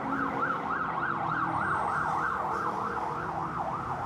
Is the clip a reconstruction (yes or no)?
yes